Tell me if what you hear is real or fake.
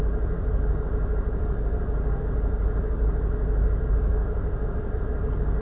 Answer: real